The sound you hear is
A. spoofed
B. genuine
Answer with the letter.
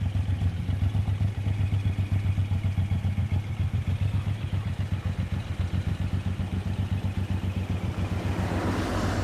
B